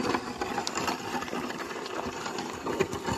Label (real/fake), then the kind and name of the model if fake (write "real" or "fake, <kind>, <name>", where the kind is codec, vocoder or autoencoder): real